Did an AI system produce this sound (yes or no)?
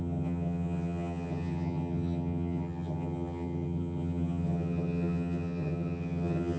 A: yes